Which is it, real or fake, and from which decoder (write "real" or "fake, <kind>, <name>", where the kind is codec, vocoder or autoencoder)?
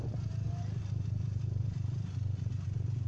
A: real